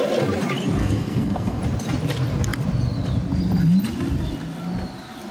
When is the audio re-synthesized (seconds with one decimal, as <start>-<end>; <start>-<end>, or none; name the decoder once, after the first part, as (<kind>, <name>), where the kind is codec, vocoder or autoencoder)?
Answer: 0.8-1.6 (codec, SNAC)